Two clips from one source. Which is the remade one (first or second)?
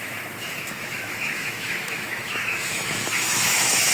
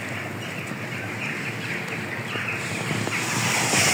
first